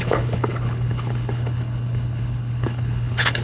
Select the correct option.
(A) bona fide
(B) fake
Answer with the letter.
B